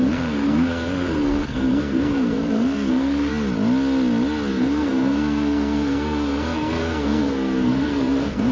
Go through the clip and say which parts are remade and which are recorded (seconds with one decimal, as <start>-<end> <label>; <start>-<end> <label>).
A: 0.0-3.3 remade; 3.3-4.5 recorded; 4.5-8.5 remade